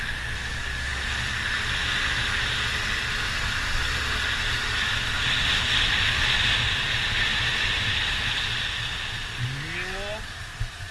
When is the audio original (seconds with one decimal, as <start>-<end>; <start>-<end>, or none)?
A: 0.0-10.9